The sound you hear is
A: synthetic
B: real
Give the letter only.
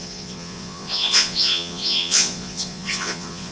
A